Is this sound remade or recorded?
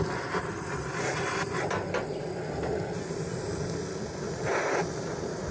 recorded